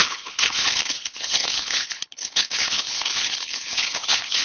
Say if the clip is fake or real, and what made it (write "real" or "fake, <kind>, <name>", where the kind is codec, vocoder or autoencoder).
fake, codec, HILCodec